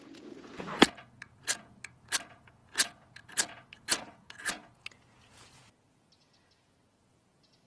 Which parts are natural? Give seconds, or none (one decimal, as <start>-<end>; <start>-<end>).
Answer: none